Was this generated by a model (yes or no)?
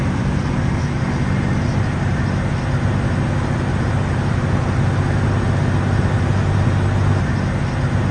no